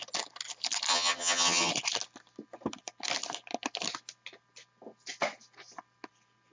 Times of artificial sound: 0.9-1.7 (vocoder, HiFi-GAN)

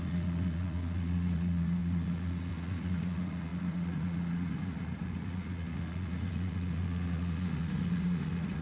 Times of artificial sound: 0.0-8.6 (vocoder, Vocos)